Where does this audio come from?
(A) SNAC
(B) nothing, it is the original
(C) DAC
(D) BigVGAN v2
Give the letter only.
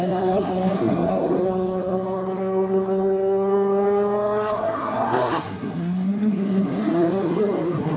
A